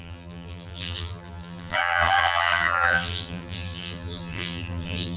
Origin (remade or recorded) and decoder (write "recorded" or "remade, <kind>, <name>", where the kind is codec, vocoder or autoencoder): remade, vocoder, BigVGAN v2